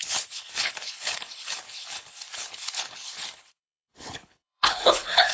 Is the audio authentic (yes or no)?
no